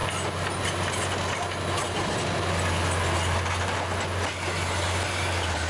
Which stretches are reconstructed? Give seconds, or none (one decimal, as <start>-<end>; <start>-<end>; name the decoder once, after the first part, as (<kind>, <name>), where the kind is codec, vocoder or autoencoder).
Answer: none